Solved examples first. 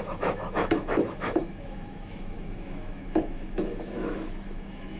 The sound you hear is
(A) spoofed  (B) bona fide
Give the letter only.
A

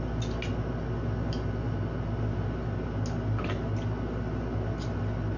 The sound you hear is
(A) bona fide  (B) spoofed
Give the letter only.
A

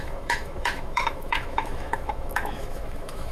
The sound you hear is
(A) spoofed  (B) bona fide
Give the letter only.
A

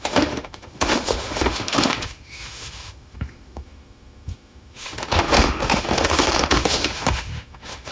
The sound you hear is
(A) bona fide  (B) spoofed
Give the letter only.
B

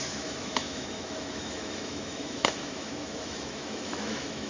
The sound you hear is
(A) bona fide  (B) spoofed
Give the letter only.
B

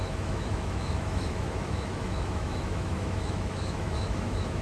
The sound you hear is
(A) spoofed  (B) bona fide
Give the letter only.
A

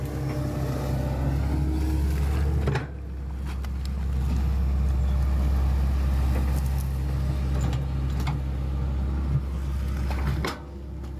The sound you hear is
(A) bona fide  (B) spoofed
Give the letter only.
A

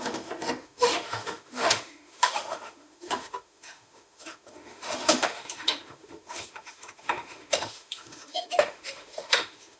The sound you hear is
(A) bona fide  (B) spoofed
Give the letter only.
B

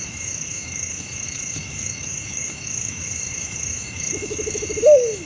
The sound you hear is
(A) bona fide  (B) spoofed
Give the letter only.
B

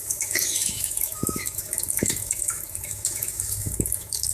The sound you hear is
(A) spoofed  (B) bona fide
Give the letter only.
A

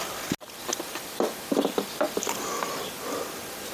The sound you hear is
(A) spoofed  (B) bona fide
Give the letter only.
B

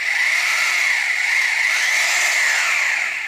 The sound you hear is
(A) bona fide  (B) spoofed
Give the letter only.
A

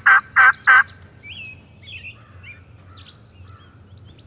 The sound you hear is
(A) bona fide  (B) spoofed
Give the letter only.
A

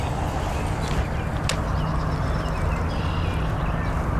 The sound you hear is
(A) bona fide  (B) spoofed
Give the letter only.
A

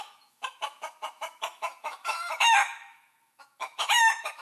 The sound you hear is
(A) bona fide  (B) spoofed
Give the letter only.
B